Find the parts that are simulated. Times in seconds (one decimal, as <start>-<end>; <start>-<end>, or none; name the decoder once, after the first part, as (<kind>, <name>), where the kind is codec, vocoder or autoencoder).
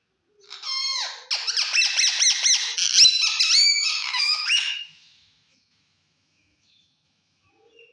3.6-7.5 (autoencoder, DAC-VAE)